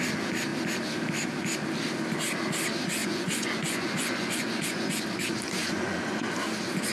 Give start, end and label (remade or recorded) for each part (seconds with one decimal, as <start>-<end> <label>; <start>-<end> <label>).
0.0-3.0 recorded; 3.0-4.9 remade; 4.9-5.6 recorded; 5.6-6.3 remade; 6.3-6.9 recorded